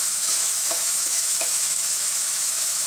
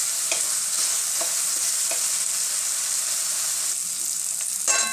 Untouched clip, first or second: second